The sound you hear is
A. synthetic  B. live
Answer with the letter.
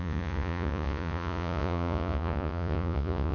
A